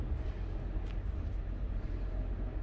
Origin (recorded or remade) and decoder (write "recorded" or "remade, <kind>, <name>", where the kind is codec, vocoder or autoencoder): recorded